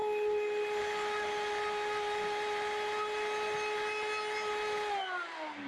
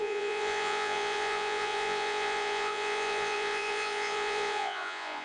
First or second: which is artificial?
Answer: second